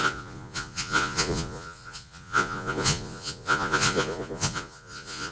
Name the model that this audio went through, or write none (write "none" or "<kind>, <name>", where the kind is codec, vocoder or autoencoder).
vocoder, Vocos